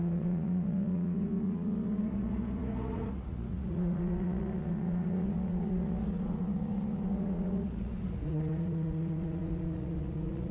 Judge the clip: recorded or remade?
remade